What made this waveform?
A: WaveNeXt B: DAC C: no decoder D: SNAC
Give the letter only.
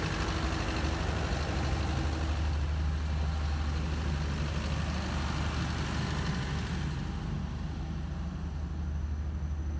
C